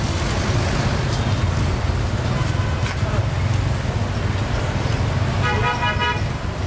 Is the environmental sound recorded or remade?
recorded